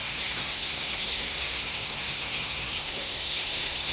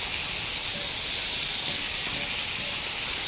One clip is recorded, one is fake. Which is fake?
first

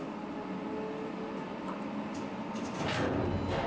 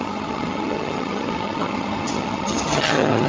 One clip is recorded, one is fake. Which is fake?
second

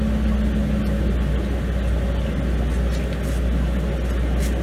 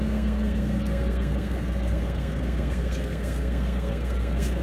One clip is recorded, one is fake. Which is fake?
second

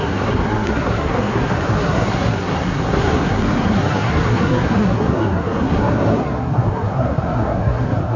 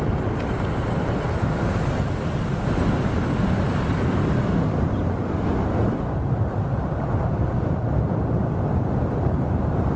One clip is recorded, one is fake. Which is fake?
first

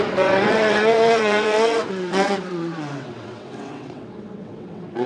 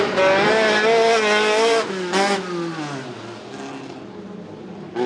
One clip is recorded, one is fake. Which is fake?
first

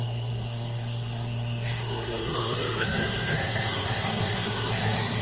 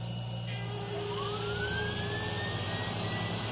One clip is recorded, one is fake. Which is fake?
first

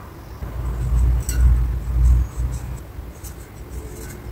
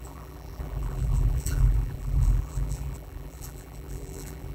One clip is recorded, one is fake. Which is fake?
second